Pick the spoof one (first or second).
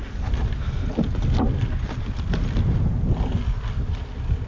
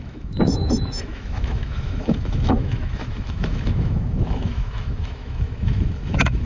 second